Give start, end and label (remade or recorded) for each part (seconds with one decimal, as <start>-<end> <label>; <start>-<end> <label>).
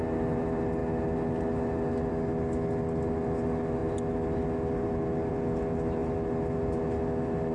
0.0-7.5 recorded